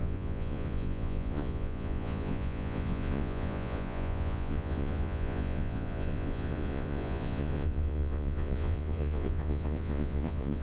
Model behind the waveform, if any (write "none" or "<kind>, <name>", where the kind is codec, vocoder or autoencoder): vocoder, Vocos